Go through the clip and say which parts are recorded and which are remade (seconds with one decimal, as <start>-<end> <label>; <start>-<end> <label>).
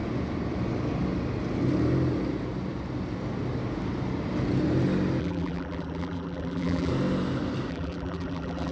0.0-5.2 recorded; 5.2-6.9 remade; 6.9-7.7 recorded; 7.7-8.7 remade